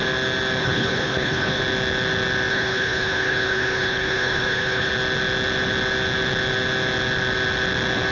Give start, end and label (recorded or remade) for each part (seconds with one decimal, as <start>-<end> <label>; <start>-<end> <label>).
0.0-0.6 recorded; 0.6-1.6 remade; 1.6-2.5 recorded; 2.5-4.9 remade; 4.9-8.1 recorded